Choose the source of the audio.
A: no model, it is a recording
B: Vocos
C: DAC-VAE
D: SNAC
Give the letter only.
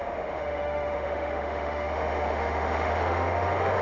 C